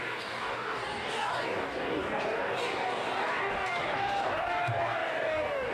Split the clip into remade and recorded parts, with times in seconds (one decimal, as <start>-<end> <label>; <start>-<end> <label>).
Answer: 0.0-5.7 remade